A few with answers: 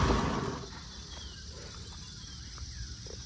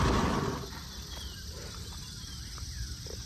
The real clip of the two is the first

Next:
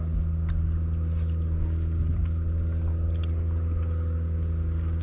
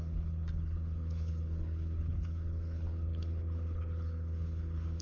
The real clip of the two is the first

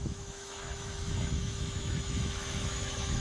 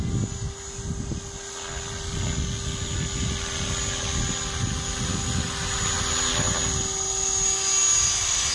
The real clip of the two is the second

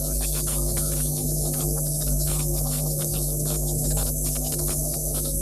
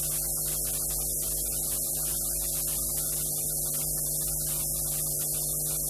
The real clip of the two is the second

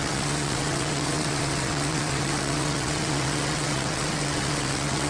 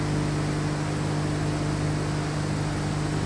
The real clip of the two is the second